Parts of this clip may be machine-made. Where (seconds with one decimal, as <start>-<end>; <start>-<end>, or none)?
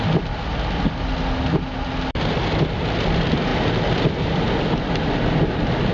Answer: 0.0-3.5; 4.2-5.9